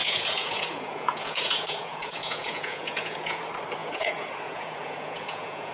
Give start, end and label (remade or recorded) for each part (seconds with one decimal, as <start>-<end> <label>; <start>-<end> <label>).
0.0-3.4 remade; 3.4-3.8 recorded; 3.8-5.7 remade